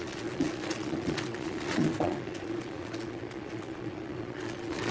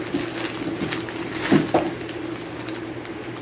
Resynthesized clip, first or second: first